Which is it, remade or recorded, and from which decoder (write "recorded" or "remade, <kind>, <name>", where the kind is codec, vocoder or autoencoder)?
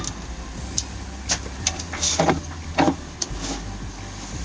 recorded